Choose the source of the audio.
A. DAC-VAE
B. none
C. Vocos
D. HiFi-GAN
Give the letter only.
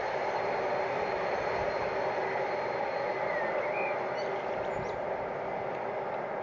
B